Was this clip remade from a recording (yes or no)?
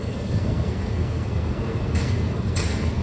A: yes